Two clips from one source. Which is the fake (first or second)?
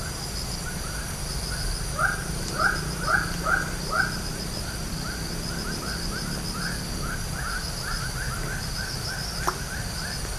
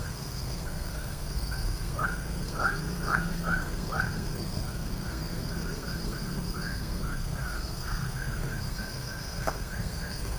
second